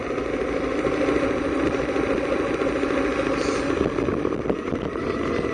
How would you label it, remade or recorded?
recorded